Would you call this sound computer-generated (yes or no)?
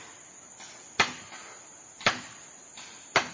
no